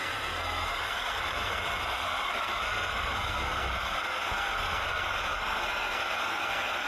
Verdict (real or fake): fake